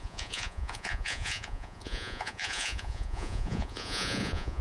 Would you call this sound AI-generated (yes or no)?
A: yes